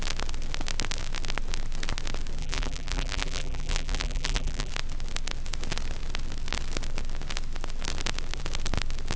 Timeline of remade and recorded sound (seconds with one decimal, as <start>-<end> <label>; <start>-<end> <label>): 0.0-2.4 recorded; 2.4-4.7 remade; 4.7-9.2 recorded